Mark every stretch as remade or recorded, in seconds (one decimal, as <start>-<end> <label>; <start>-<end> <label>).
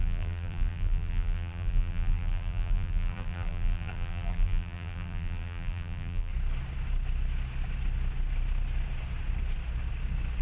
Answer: 0.0-6.3 remade; 6.3-10.4 recorded